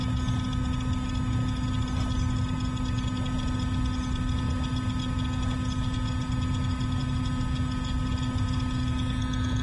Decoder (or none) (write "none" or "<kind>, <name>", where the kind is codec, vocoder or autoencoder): none